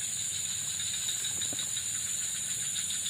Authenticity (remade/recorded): recorded